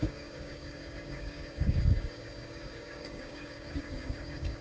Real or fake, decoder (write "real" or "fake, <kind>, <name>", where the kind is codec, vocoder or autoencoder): fake, codec, DAC